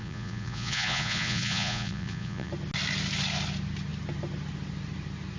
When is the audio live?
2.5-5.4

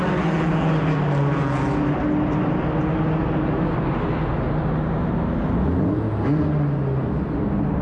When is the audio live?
0.0-3.2; 4.2-7.8

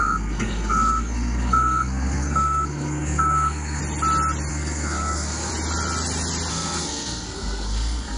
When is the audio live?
3.8-4.5; 5.5-6.5

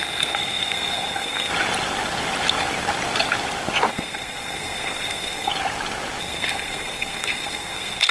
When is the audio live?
1.5-3.9; 5.5-6.2

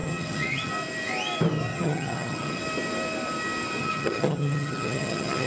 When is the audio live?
0.7-1.7; 2.6-3.8

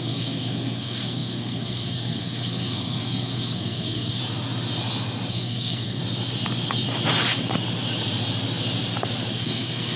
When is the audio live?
4.2-5.3; 6.0-9.3

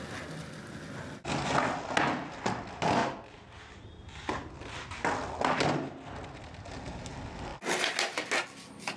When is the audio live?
0.0-3.0; 3.7-9.0

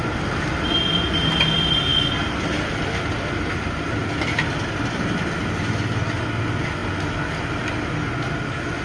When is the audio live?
0.0-8.8